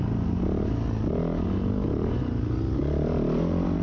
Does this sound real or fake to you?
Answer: real